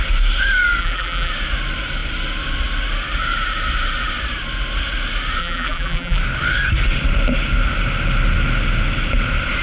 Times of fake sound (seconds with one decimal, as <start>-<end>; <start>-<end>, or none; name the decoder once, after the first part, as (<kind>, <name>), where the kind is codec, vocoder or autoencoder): 0.8-1.3 (vocoder, BigVGAN v2); 5.4-6.2